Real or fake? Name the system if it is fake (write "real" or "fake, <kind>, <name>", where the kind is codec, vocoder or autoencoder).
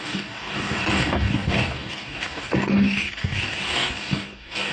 fake, codec, DAC